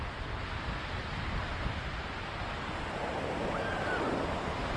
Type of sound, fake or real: real